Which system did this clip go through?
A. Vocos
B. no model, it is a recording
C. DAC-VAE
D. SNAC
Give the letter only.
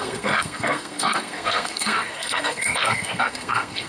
D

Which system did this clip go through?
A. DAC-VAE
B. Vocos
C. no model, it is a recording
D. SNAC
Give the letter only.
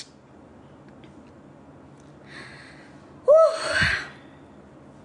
C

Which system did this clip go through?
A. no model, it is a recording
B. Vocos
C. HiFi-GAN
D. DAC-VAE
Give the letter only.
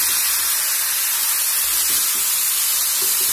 A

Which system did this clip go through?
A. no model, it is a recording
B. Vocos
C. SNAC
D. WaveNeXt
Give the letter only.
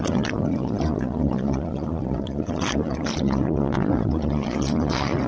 B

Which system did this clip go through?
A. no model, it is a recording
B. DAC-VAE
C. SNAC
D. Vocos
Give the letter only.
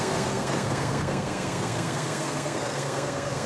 C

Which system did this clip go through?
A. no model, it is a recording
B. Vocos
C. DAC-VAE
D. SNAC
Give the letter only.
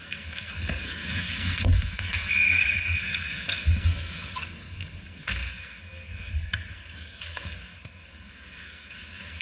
D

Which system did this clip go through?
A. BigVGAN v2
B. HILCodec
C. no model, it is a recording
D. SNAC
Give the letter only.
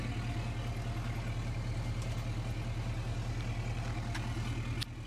C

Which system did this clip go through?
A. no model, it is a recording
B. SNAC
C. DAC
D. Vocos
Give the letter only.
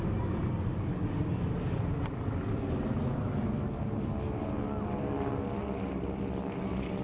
A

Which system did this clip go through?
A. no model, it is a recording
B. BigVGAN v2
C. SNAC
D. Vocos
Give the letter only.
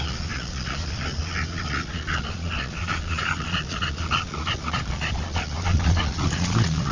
D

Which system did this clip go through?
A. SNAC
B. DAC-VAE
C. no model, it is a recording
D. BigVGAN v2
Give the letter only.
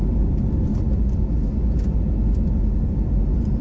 C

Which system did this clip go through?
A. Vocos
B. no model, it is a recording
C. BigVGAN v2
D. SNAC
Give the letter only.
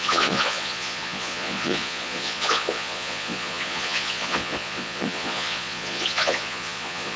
A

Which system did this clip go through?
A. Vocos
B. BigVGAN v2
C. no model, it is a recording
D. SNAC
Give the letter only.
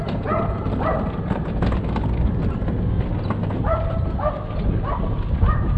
C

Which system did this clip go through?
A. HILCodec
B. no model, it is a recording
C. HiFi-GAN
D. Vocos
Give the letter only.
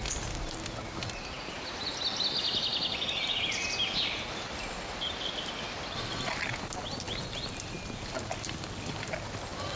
B